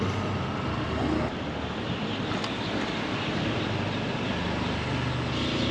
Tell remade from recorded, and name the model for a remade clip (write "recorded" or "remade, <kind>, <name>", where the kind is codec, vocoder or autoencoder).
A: recorded